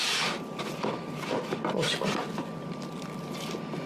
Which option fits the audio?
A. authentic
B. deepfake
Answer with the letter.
A